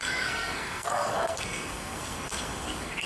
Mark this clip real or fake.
fake